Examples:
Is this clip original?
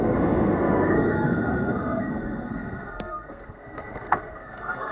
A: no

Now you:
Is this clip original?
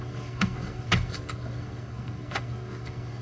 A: no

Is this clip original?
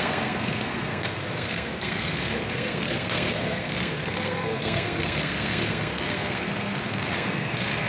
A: no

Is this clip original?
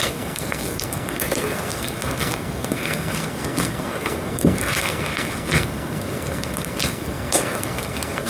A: no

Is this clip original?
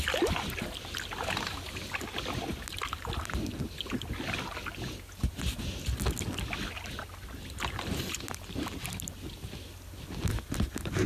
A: yes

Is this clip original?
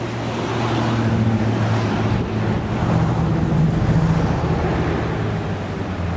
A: yes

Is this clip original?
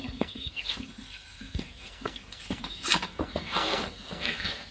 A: no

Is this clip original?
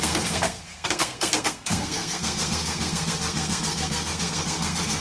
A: no